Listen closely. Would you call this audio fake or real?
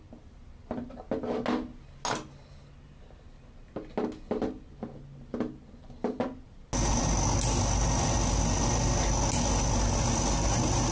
real